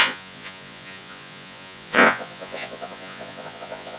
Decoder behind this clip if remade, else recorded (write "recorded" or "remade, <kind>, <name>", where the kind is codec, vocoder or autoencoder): remade, vocoder, Vocos